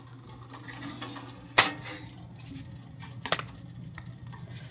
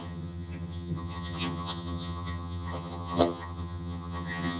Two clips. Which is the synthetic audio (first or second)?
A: second